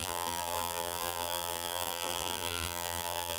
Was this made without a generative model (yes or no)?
no